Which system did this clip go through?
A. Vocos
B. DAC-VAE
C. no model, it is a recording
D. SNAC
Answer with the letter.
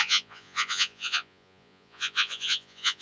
A